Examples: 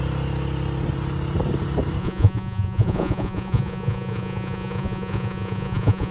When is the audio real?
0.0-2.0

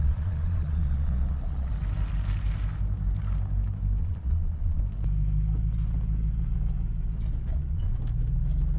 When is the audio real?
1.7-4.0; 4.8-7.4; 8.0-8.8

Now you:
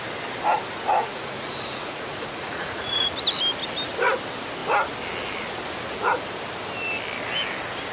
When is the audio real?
0.0-1.0; 3.1-7.9

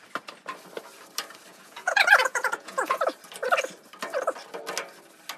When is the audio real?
0.0-1.5; 3.0-5.4

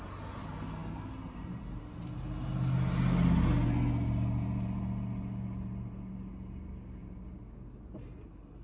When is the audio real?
0.0-8.6

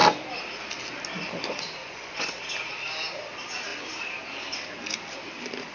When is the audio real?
0.0-1.8; 2.3-5.7